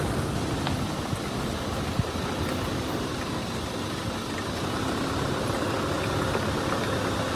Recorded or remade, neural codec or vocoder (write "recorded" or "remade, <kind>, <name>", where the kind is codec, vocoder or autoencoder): recorded